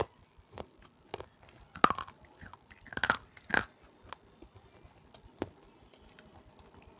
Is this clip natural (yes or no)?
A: yes